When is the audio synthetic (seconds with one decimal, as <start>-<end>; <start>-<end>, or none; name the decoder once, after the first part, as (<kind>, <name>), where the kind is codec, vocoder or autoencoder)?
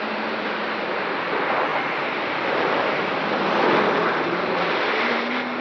1.7-5.1 (vocoder, BigVGAN v2)